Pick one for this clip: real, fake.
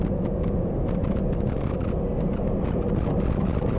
real